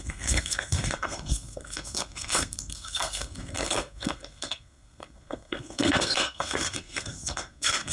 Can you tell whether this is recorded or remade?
remade